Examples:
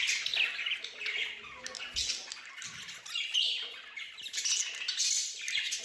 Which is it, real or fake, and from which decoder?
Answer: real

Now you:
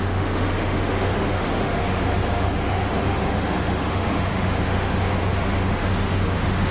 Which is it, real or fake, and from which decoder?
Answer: fake, autoencoder, DAC-VAE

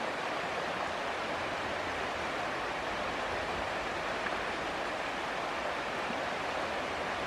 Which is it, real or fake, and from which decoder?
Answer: real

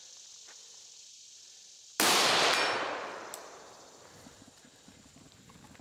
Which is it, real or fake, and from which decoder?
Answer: real